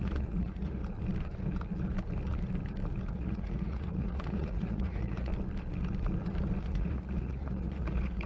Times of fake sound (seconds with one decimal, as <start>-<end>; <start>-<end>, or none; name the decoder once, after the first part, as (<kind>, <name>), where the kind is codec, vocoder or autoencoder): 0.0-0.8 (vocoder, Vocos); 3.1-5.3; 6.6-8.3